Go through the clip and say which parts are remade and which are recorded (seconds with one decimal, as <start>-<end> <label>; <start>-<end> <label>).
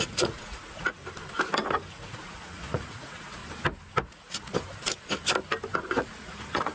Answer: 0.0-1.0 remade; 1.0-1.9 recorded; 1.9-3.4 remade; 3.4-4.1 recorded; 4.1-4.5 remade; 4.5-6.0 recorded; 6.0-6.7 remade